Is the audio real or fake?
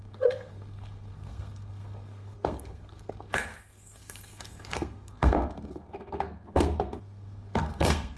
fake